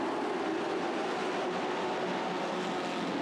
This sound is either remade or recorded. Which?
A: recorded